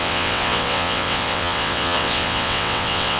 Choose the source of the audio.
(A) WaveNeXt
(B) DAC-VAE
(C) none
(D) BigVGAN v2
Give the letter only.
A